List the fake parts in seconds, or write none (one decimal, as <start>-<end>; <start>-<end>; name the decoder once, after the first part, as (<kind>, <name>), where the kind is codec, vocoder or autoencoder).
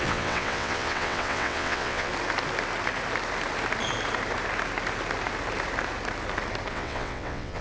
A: 0.0-2.1 (vocoder, WaveNeXt); 6.7-7.6